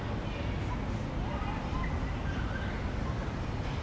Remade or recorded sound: recorded